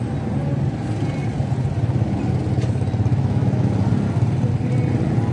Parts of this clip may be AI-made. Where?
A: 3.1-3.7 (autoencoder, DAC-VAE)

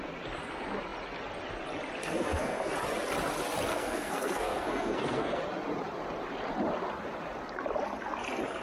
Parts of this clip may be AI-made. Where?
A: 2.0-2.7 (codec, SNAC); 3.7-5.4

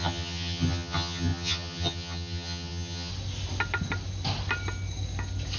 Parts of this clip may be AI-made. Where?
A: 0.0-3.1 (vocoder, HiFi-GAN)

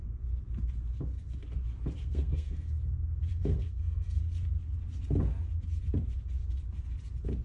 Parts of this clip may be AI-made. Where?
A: 2.0-2.7 (codec, SNAC); 3.3-4.2

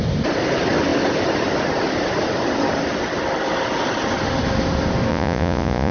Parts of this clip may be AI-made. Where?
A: 5.1-5.9 (vocoder, Vocos)